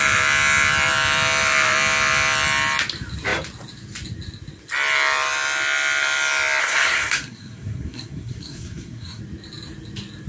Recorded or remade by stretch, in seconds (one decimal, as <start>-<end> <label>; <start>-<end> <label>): 0.0-6.6 recorded; 6.6-9.2 remade; 9.2-10.3 recorded